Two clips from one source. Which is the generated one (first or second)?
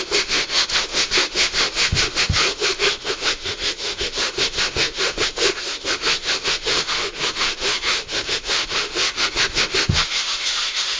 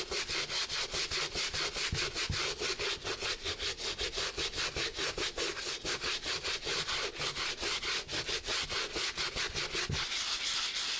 first